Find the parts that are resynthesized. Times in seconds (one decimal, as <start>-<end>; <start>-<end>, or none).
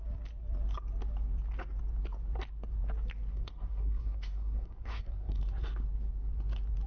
3.3-5.4